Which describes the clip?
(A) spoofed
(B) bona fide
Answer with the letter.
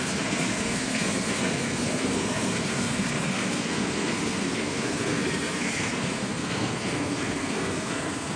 A